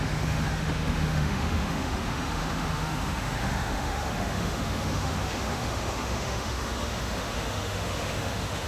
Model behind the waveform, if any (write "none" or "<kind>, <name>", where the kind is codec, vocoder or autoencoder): autoencoder, DAC-VAE